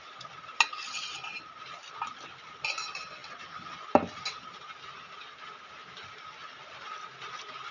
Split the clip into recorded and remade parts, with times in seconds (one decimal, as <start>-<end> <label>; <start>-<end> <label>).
0.0-7.7 recorded